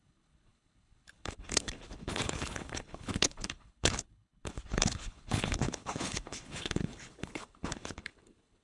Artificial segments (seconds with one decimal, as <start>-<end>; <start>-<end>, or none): 0.0-8.6